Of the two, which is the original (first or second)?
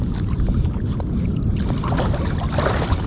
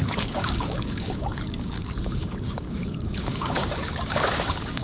first